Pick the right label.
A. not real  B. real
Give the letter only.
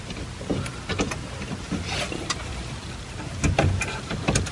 B